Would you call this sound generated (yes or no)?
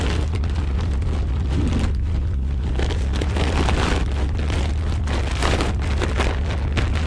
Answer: no